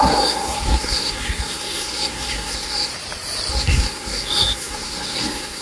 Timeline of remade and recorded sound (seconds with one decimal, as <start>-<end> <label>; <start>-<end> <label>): 0.0-2.9 remade; 2.9-3.5 recorded; 3.5-5.6 remade